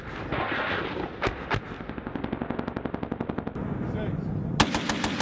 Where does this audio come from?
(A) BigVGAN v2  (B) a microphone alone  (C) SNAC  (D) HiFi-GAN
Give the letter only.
B